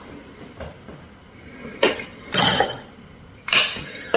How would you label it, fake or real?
fake